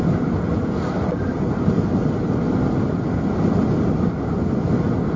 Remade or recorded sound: recorded